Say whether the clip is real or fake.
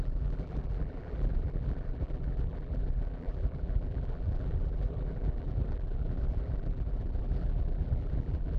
fake